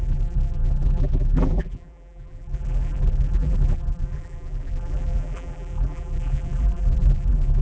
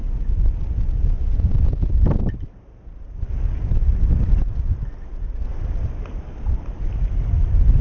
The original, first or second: second